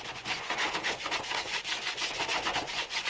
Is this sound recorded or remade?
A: remade